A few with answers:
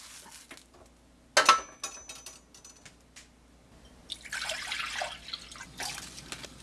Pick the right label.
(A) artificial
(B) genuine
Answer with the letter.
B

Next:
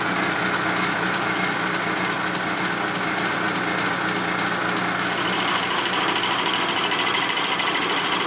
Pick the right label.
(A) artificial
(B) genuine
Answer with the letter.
B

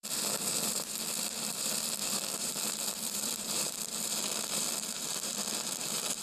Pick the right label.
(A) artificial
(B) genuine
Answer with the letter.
A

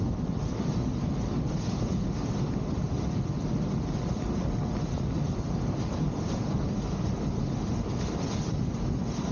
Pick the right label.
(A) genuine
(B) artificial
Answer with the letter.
A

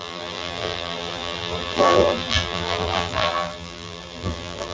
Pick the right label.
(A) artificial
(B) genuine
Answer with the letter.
A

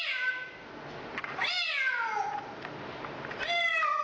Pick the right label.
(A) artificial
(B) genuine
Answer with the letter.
B